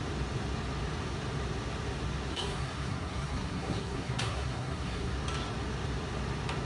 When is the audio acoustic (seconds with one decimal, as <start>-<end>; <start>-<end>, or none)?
0.0-2.3; 5.1-6.7